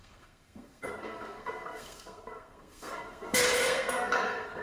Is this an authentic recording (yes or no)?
no